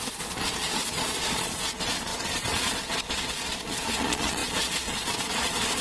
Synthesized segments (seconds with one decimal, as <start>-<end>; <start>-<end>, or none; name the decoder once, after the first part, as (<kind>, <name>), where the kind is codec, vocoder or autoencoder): 0.0-5.8 (vocoder, Vocos)